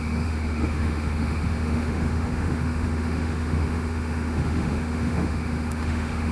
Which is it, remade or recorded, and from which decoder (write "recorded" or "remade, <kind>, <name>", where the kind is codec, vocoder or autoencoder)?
remade, autoencoder, DAC-VAE